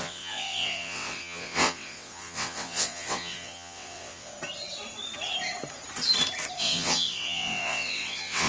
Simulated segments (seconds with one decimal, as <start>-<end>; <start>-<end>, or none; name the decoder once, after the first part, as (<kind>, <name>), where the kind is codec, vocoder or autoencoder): 0.0-4.3 (vocoder, WaveNeXt); 6.6-8.5